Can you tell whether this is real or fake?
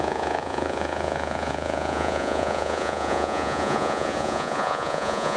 fake